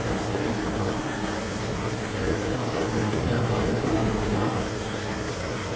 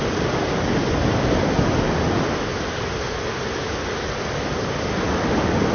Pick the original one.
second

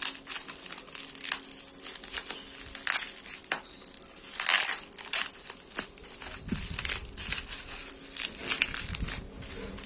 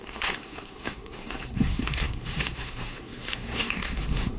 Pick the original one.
first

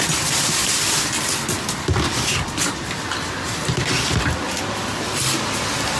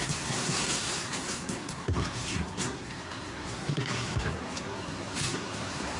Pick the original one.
first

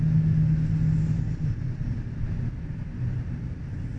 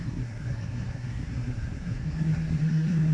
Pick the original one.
first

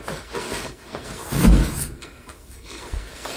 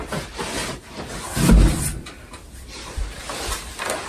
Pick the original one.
second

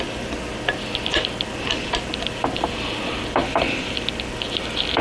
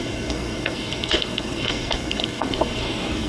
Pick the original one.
first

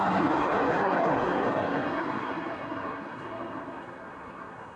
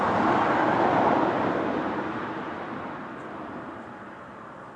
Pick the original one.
second